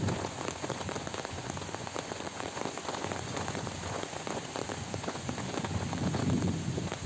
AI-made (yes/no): yes